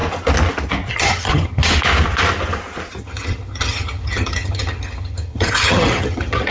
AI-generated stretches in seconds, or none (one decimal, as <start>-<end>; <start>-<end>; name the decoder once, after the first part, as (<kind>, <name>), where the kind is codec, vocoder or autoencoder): 0.9-1.6 (vocoder, HiFi-GAN); 3.0-6.5